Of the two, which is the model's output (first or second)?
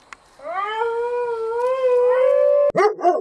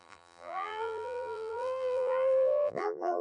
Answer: second